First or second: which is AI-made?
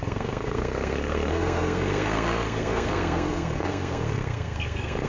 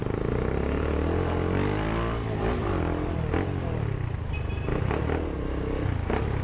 first